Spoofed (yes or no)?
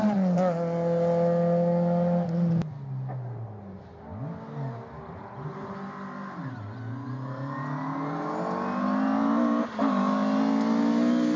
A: no